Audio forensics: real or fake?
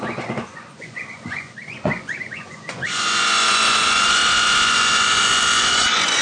fake